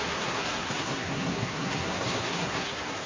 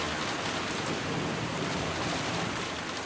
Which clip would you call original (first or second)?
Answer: second